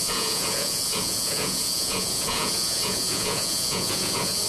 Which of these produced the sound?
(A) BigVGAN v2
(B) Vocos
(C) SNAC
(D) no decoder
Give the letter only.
B